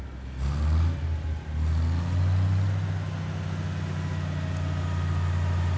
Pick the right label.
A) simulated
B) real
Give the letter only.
B